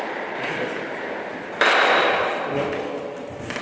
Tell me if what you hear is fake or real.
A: real